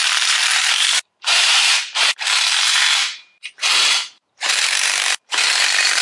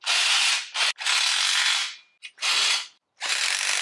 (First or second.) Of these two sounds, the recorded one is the second